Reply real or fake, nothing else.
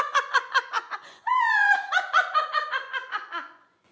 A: fake